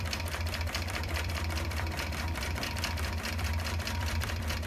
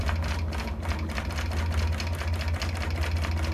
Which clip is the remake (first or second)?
first